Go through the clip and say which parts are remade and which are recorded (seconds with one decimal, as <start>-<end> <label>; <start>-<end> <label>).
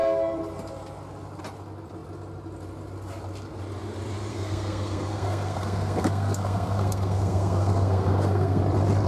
0.0-4.3 recorded; 4.3-8.6 remade; 8.6-9.1 recorded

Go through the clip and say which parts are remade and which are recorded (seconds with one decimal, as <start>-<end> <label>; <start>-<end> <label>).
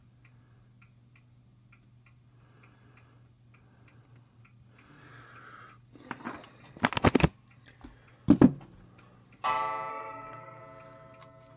0.0-9.9 recorded; 9.9-10.6 remade; 10.6-11.6 recorded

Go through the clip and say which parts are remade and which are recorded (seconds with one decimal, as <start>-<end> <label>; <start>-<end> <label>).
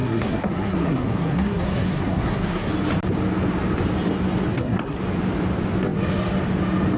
0.0-2.7 remade; 2.7-4.5 recorded; 4.5-5.0 remade; 5.0-7.0 recorded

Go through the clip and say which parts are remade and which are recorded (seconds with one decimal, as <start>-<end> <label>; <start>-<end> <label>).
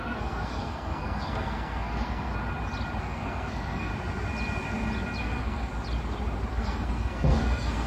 0.0-2.3 remade; 2.3-3.0 recorded; 3.0-3.9 remade; 3.9-5.2 recorded; 5.2-5.7 remade; 5.7-6.5 recorded; 6.5-7.9 remade